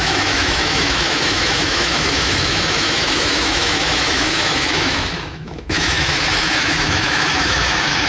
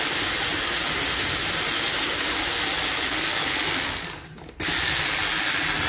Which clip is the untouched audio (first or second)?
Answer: second